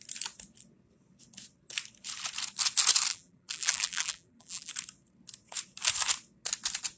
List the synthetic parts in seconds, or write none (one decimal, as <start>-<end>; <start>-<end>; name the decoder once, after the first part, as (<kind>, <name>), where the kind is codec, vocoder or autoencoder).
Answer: 3.1-4.7 (vocoder, BigVGAN v2)